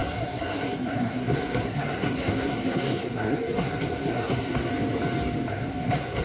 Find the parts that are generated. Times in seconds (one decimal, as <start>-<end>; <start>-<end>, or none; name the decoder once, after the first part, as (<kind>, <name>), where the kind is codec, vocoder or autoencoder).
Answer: 0.0-4.7 (codec, SNAC); 5.5-6.2